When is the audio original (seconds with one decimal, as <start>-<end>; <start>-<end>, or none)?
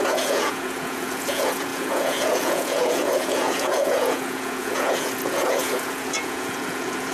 none